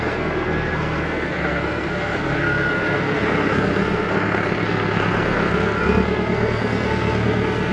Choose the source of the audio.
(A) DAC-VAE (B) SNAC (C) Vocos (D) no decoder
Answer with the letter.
B